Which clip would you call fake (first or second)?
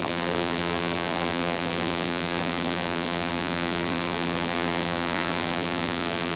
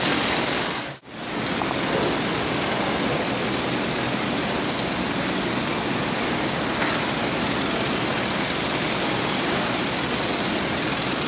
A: first